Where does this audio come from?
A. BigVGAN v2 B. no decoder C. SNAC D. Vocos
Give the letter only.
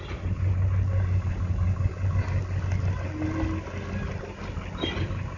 B